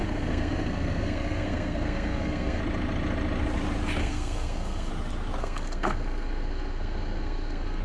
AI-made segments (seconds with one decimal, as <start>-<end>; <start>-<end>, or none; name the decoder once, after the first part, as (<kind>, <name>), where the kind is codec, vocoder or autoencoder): 0.0-2.6 (codec, SNAC); 4.0-4.9; 5.4-7.8